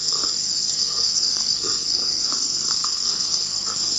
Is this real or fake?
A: fake